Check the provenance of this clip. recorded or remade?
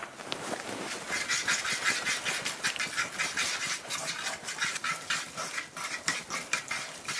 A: recorded